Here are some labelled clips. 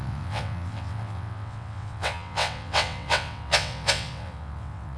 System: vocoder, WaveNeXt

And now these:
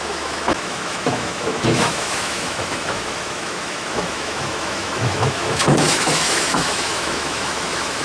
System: autoencoder, DAC-VAE